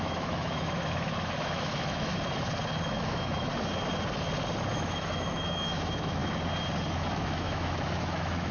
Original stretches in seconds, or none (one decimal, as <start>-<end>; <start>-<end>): 2.1-2.8; 3.5-4.7; 6.2-6.9